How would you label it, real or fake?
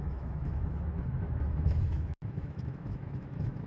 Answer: fake